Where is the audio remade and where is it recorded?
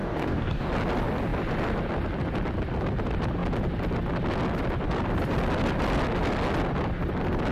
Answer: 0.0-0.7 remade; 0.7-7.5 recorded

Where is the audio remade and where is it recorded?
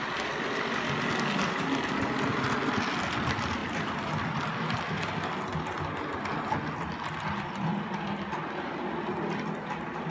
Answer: 0.0-3.6 recorded; 3.6-4.5 remade; 4.5-7.7 recorded; 7.7-8.7 remade; 8.7-10.1 recorded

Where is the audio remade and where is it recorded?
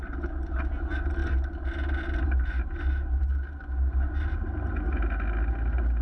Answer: 0.0-6.0 recorded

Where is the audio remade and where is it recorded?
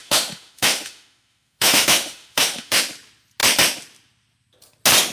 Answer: 0.0-2.8 remade; 2.8-5.1 recorded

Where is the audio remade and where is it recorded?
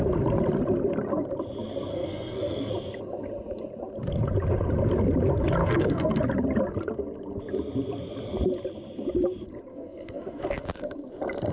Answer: 0.0-1.9 recorded; 1.9-2.7 remade; 2.7-5.6 recorded; 5.6-6.2 remade; 6.2-9.7 recorded; 9.7-10.4 remade; 10.4-11.5 recorded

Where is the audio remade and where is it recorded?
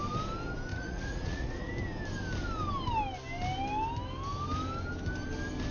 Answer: 0.0-0.7 recorded; 0.7-1.7 remade; 1.7-5.7 recorded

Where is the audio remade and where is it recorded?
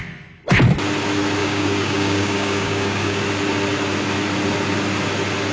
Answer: 0.0-1.4 recorded; 1.4-3.2 remade; 3.2-5.5 recorded